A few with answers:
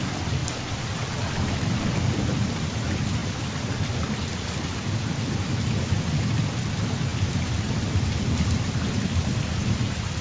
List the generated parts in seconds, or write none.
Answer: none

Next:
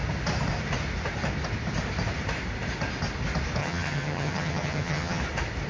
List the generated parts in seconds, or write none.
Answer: 3.6-5.2 (vocoder, HiFi-GAN)

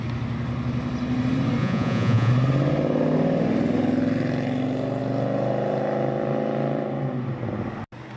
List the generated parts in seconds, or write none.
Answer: 1.6-2.3 (vocoder, Vocos)

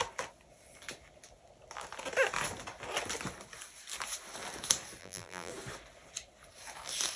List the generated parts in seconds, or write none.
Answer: 5.0-5.5 (vocoder, BigVGAN v2)

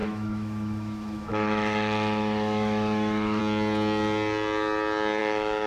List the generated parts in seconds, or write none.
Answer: 0.0-3.4 (autoencoder, DAC-VAE); 5.2-5.7

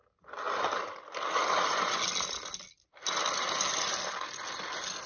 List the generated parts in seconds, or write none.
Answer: none

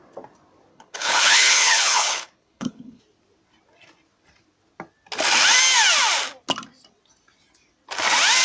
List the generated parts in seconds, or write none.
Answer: 0.7-3.0 (codec, HILCodec)

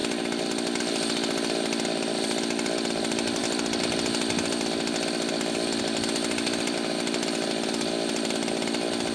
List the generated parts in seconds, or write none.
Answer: none